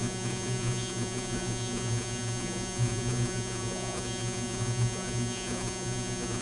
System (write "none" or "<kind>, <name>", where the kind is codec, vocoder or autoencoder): vocoder, Vocos